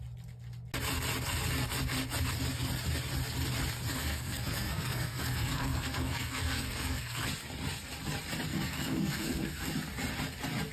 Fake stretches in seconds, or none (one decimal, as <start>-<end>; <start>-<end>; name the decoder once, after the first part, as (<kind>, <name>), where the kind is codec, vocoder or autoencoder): 3.9-7.2 (codec, SNAC); 8.5-9.7